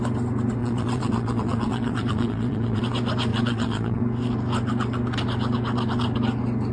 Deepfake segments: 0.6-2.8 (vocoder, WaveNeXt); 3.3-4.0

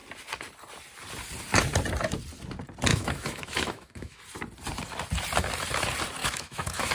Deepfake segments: 2.9-4.2 (autoencoder, DAC-VAE); 6.2-6.9

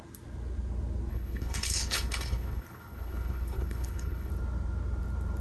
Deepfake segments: 1.1-4.3 (codec, HILCodec)

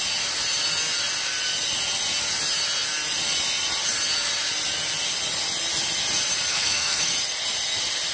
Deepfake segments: 6.5-7.1 (codec, SNAC)